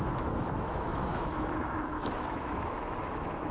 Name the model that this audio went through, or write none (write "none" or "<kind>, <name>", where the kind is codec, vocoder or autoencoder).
autoencoder, DAC-VAE